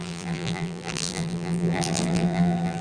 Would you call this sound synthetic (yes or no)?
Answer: yes